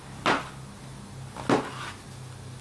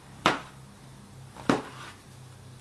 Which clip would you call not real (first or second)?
second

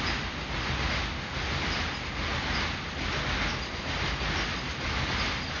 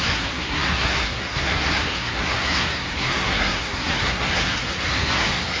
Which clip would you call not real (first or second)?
second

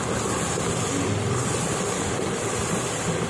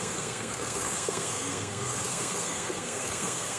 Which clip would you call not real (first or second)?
second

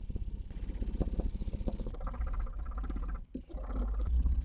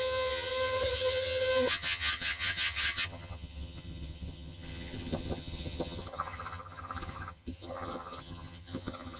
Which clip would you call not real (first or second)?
second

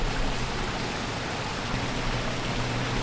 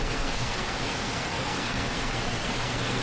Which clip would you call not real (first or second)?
second